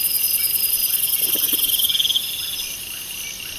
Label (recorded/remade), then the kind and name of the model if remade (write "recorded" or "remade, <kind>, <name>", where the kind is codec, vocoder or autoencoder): recorded